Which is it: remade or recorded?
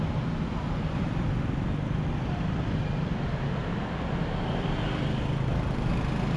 recorded